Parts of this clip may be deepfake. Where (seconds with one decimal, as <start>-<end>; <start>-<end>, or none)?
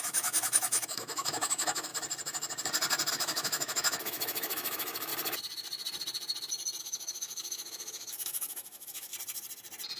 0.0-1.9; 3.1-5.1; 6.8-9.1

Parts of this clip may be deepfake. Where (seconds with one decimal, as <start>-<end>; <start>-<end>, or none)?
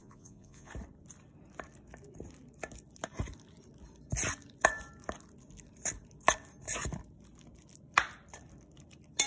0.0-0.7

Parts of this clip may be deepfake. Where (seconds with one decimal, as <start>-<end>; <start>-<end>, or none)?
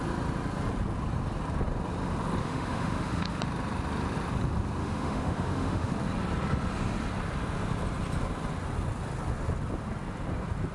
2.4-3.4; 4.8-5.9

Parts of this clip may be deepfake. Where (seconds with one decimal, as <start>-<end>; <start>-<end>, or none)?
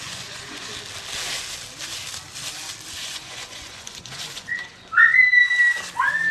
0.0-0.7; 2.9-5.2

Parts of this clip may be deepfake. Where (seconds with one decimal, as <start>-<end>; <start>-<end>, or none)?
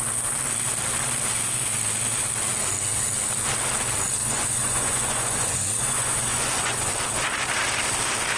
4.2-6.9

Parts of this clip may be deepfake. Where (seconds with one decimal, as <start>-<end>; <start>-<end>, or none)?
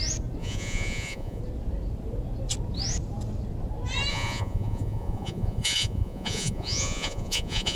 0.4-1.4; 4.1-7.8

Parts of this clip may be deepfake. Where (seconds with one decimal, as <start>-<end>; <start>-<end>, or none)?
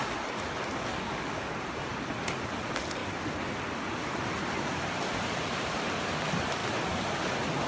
0.9-1.5